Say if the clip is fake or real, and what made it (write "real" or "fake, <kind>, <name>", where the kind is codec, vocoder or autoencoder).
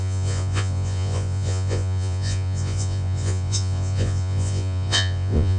fake, vocoder, Vocos